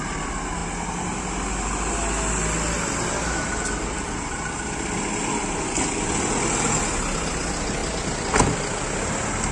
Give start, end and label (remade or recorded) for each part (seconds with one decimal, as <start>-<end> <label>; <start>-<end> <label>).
0.0-9.5 recorded